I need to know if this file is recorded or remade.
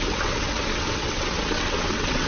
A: remade